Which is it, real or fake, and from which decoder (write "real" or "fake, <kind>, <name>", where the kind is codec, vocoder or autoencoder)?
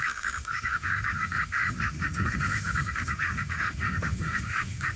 fake, autoencoder, DAC-VAE